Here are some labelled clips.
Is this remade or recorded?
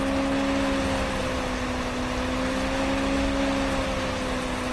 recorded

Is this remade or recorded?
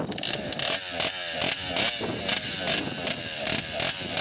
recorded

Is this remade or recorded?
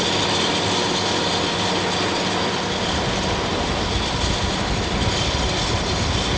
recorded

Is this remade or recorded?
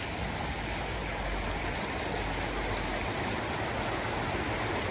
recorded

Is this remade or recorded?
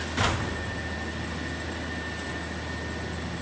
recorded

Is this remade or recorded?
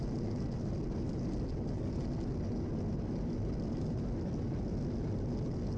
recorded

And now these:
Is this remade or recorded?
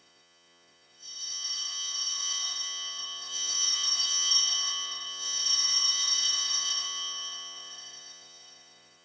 remade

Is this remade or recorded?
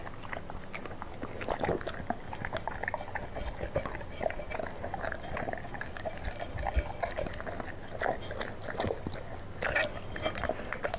recorded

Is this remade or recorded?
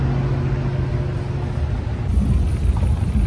recorded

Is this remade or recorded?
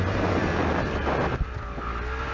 recorded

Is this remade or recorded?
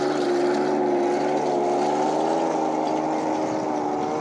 recorded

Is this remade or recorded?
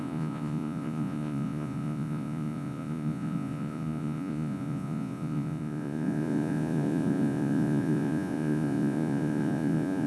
remade